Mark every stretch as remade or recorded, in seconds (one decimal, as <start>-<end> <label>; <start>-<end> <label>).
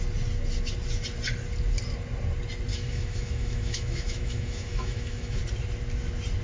0.0-2.7 recorded; 2.7-5.4 remade; 5.4-6.4 recorded